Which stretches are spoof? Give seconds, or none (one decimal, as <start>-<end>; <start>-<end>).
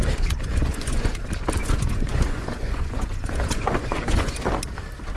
0.4-1.1; 1.6-4.5